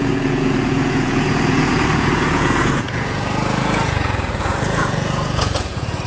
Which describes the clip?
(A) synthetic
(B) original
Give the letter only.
A